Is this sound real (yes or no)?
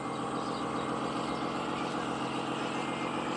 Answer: yes